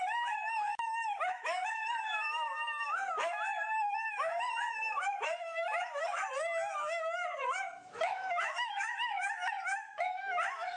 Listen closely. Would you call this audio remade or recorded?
remade